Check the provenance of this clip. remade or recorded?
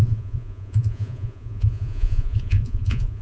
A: remade